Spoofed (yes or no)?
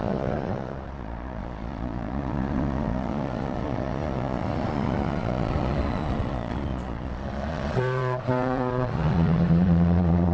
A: yes